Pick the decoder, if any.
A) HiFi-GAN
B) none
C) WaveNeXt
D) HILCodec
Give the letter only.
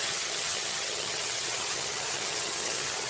A